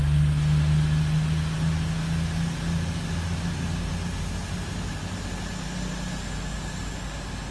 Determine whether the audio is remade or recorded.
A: recorded